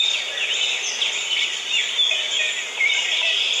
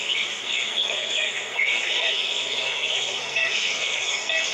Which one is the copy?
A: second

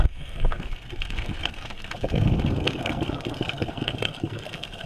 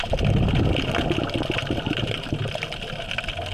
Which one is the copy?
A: first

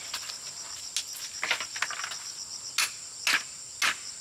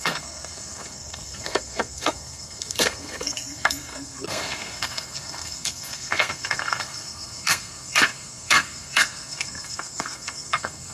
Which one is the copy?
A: second